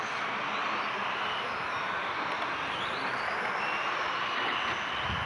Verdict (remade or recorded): recorded